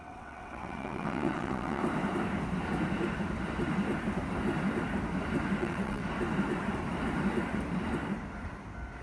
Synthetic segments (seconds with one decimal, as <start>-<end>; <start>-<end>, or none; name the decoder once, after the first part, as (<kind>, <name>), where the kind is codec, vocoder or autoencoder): 0.0-1.8 (vocoder, WaveNeXt); 5.6-6.0